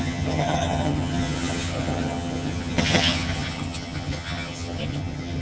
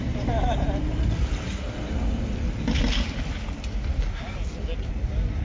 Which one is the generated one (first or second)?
first